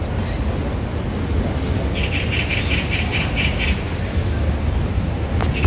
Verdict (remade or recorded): recorded